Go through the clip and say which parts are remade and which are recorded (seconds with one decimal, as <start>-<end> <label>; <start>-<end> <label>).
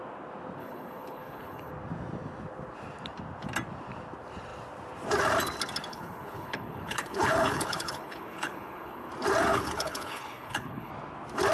0.0-0.6 recorded; 0.6-1.7 remade; 1.7-5.9 recorded; 5.9-9.1 remade; 9.1-9.5 recorded; 9.5-10.9 remade; 10.9-11.5 recorded